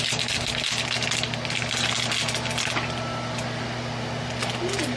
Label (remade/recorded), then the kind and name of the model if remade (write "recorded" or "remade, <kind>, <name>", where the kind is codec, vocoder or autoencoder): recorded